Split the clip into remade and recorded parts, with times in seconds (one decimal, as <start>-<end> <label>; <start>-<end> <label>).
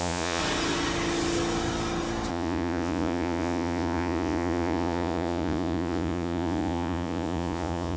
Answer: 0.0-0.4 remade; 0.4-2.3 recorded; 2.3-8.0 remade